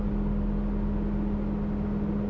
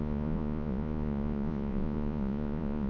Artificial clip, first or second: second